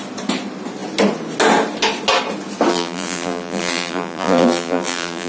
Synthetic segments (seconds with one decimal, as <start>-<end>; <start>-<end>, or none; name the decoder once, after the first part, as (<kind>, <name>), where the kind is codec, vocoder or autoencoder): 2.7-5.3 (vocoder, BigVGAN v2)